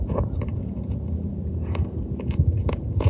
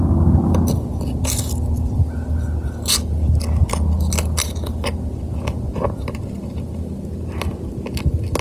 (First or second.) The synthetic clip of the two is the first